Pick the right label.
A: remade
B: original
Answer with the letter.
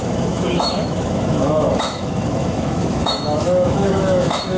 A